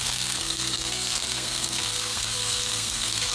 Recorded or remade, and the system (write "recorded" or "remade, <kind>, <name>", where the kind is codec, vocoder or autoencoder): remade, codec, SNAC